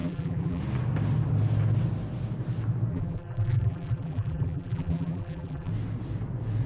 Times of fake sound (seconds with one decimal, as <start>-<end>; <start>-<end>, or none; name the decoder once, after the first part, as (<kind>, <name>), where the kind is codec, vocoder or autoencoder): 0.0-0.6 (vocoder, BigVGAN v2); 2.9-5.7